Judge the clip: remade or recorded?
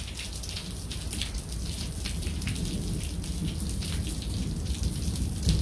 recorded